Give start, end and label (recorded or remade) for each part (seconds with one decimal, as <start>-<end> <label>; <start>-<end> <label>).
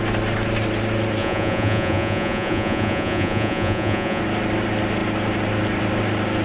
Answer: 0.0-1.2 recorded; 1.2-4.2 remade; 4.2-6.4 recorded